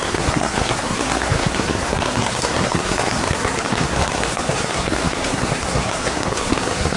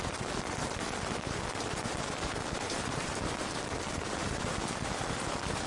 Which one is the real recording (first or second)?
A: second